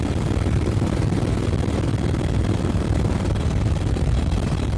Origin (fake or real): fake